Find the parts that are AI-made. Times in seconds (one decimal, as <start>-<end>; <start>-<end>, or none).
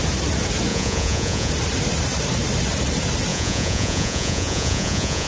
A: 0.7-1.5; 3.3-5.3